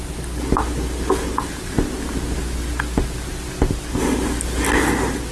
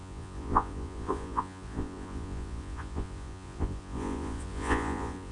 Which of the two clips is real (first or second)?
first